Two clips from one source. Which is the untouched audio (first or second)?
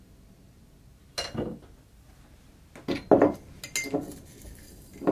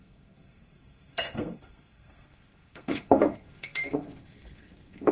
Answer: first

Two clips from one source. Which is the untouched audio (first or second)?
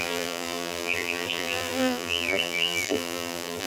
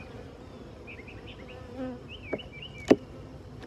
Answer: second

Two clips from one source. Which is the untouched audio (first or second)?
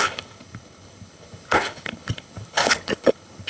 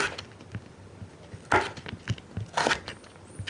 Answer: second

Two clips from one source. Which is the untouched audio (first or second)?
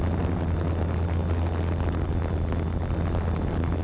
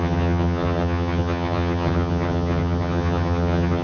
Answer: first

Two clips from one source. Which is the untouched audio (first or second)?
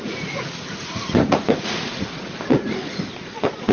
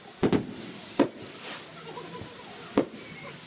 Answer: second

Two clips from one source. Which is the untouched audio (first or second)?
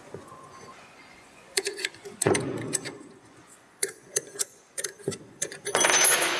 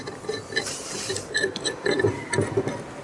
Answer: second